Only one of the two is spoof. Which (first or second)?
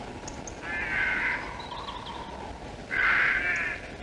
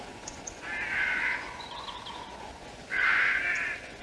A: second